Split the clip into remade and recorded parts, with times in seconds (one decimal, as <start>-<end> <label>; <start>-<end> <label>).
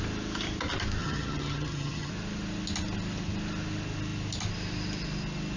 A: 0.0-1.0 recorded; 1.0-2.1 remade; 2.1-5.6 recorded